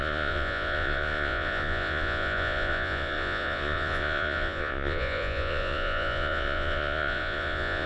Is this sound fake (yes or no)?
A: yes